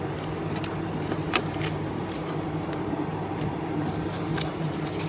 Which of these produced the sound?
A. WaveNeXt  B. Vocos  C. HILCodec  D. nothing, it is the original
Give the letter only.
D